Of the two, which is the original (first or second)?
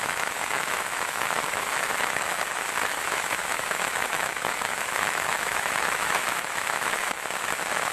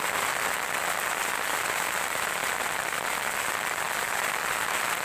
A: second